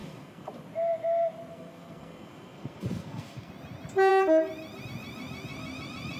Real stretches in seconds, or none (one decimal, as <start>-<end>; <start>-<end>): 0.5-1.5; 3.5-6.2